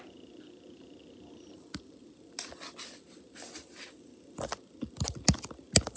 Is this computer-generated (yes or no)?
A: no